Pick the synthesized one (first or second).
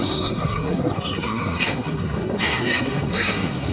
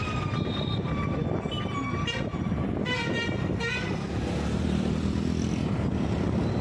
first